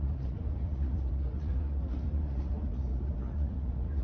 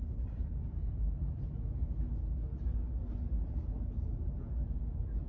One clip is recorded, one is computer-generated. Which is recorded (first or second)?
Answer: second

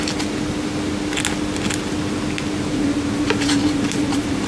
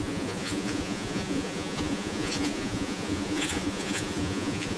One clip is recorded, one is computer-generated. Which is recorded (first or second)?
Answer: first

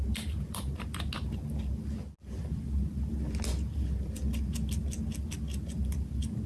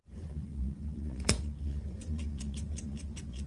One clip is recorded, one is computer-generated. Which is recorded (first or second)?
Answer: first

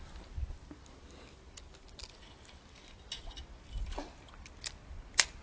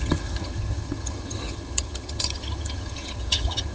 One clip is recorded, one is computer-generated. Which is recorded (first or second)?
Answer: first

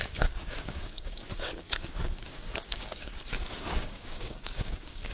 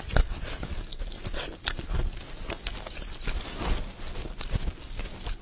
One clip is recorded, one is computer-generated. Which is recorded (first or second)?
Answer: second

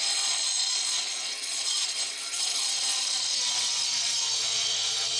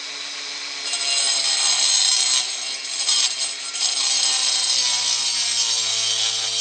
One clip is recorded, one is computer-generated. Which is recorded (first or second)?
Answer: second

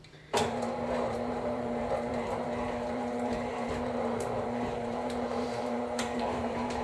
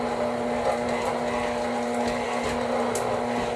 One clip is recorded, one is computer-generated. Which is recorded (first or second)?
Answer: second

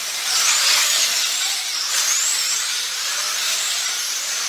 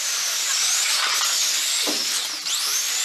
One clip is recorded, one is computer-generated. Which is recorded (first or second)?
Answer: second